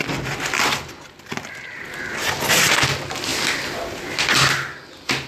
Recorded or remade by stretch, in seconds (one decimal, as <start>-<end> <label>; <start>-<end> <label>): 0.0-5.3 recorded